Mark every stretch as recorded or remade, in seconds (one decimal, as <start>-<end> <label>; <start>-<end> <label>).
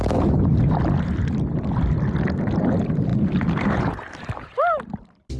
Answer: 0.0-5.4 recorded